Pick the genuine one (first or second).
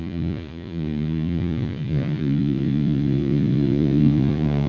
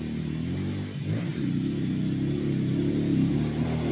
second